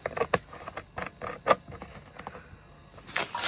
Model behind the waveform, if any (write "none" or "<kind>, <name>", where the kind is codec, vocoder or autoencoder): none